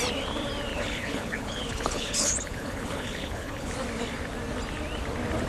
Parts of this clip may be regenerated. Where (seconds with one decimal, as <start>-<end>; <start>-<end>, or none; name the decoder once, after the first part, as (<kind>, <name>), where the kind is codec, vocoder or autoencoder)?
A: 0.7-3.7 (codec, HILCodec)